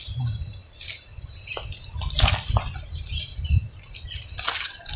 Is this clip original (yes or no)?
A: yes